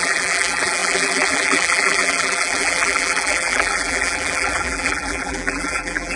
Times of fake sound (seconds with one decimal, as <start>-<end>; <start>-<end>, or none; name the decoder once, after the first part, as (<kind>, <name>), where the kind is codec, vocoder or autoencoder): 0.0-6.2 (vocoder, BigVGAN v2)